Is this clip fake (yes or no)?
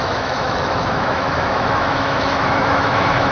yes